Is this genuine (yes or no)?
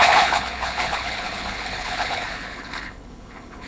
no